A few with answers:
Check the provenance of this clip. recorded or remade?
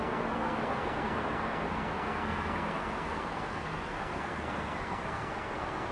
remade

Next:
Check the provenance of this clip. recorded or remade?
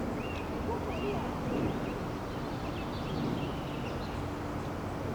recorded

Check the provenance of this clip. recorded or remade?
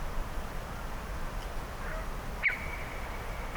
recorded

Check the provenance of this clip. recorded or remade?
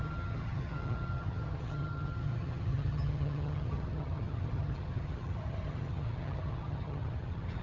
remade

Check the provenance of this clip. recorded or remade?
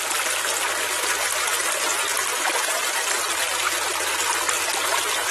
recorded